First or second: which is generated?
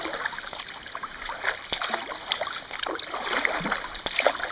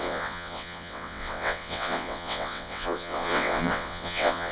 second